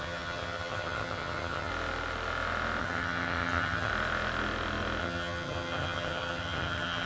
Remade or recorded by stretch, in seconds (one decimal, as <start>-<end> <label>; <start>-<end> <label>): 0.0-1.7 remade; 1.7-2.8 recorded; 2.8-3.9 remade; 3.9-5.0 recorded; 5.0-7.1 remade